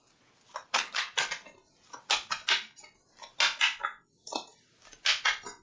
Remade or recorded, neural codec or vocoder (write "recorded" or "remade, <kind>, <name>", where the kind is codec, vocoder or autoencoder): recorded